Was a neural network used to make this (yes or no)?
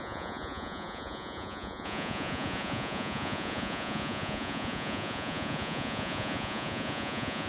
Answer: yes